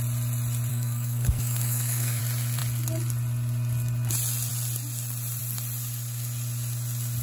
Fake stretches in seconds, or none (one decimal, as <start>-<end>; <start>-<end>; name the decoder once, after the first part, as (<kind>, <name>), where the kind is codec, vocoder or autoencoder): 0.7-2.2 (codec, SNAC)